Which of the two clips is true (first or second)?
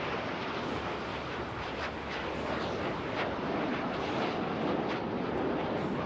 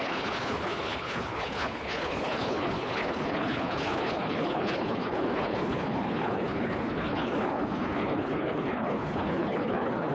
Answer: first